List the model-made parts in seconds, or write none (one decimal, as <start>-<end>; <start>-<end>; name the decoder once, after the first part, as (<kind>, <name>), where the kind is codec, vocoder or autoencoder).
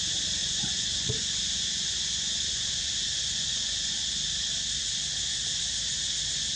0.4-3.9 (vocoder, Vocos)